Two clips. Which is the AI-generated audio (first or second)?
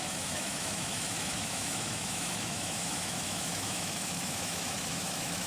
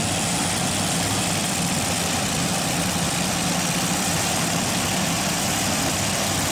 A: first